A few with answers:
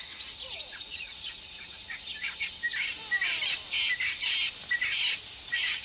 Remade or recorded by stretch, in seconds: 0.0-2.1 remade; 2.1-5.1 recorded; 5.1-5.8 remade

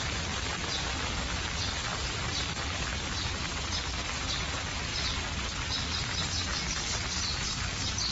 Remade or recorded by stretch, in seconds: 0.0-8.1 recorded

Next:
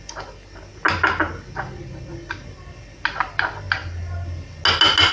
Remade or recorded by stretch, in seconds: 0.0-5.1 recorded

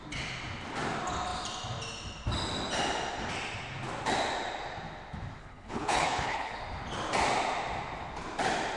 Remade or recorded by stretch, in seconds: 0.0-5.4 recorded; 5.4-6.6 remade; 6.6-8.8 recorded

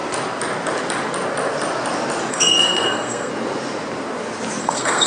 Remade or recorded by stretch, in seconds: 0.0-2.3 recorded; 2.3-3.3 remade; 3.3-4.6 recorded; 4.6-5.1 remade

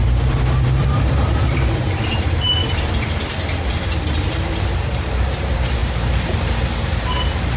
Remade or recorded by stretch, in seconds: 0.0-2.6 remade; 2.6-4.3 recorded; 4.3-7.6 remade

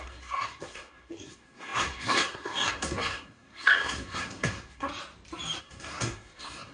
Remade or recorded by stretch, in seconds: 0.0-4.9 remade; 4.9-5.6 recorded; 5.6-6.7 remade